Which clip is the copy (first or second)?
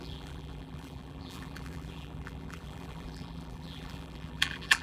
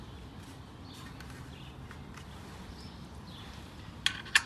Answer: first